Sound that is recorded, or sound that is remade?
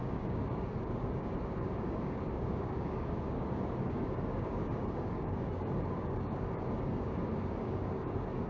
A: remade